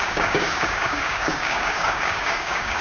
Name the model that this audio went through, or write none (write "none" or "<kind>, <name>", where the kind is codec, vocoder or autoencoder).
codec, DAC